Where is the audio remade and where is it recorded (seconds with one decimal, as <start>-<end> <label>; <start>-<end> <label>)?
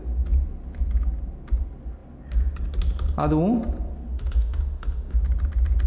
0.0-4.1 recorded; 4.1-5.2 remade; 5.2-5.9 recorded